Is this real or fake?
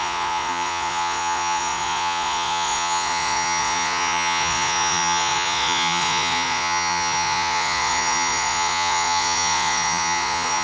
fake